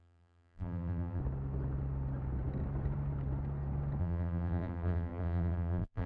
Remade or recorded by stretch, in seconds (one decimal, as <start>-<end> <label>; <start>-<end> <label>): 0.0-1.2 remade; 1.2-4.0 recorded; 4.0-6.1 remade